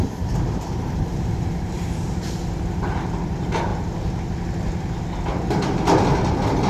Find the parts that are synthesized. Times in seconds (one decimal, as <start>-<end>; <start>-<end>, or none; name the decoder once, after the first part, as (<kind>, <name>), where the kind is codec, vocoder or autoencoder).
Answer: 0.0-3.7 (vocoder, BigVGAN v2)